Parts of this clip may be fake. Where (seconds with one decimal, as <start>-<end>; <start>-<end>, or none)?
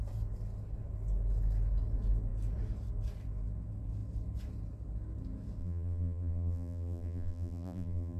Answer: 5.6-8.2